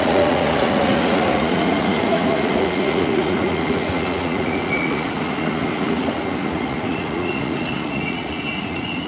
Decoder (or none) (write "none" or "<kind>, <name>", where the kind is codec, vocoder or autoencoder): vocoder, Vocos